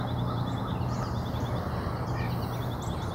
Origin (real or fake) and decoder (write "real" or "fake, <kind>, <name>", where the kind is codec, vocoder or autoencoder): real